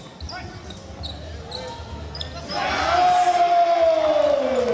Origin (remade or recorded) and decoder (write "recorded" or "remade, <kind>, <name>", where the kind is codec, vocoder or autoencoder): recorded